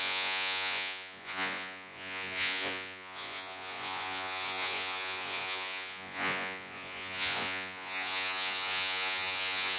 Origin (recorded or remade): remade